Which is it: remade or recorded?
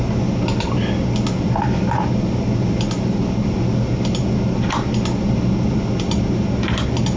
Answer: recorded